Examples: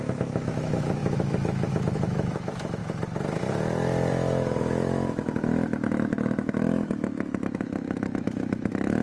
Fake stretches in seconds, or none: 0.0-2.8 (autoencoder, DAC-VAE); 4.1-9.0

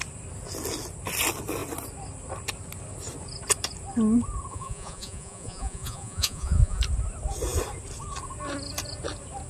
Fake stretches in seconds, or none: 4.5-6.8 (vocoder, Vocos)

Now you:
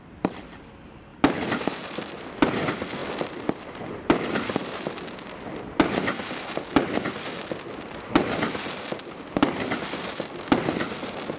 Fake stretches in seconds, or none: none

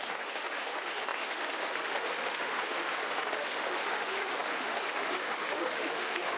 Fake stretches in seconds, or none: 0.0-6.4 (autoencoder, DAC-VAE)